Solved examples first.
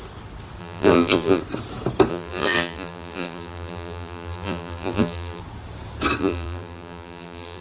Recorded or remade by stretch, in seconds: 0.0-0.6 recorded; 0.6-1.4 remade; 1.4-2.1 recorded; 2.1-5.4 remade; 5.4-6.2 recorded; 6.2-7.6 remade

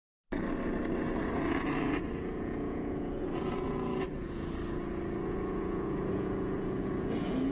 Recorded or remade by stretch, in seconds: 0.0-1.8 recorded; 1.8-4.6 remade; 4.6-5.3 recorded; 5.3-7.5 remade

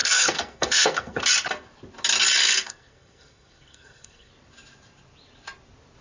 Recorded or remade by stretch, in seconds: 0.0-1.2 remade; 1.2-2.4 recorded; 2.4-4.3 remade; 4.3-6.0 recorded

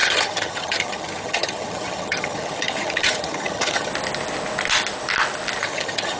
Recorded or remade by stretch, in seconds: 0.0-3.9 remade; 3.9-5.6 recorded; 5.6-6.2 remade

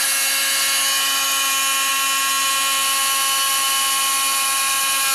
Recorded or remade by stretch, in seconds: 0.0-5.1 recorded

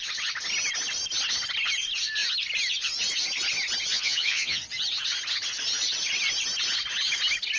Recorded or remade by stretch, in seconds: 0.0-3.9 recorded; 3.9-4.6 remade; 4.6-7.6 recorded

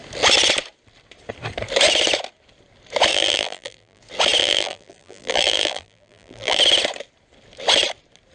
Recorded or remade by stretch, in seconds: 0.0-3.1 recorded; 3.1-4.0 remade; 4.0-4.4 recorded; 4.4-6.6 remade; 6.6-8.3 recorded

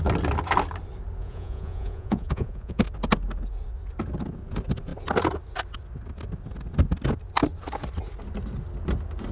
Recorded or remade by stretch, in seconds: 0.0-1.2 recorded; 1.2-2.8 remade; 2.8-9.3 recorded